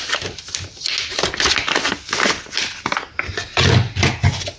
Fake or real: real